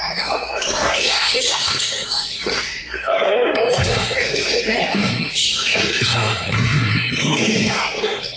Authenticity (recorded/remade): remade